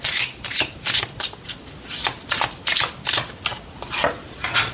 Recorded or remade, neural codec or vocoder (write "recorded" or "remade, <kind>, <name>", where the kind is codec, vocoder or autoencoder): recorded